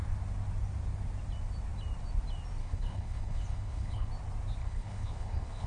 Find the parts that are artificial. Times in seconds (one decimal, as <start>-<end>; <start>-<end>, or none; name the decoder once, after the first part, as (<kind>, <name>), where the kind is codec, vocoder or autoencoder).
2.6-4.1 (codec, HILCodec); 4.6-5.7